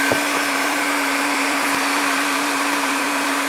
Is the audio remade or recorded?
remade